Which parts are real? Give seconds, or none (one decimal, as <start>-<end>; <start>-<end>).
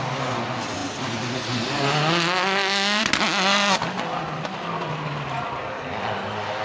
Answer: 0.0-6.6